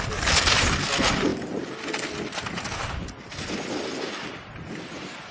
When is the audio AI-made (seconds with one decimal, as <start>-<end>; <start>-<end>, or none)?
none